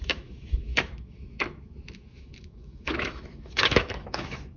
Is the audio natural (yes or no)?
no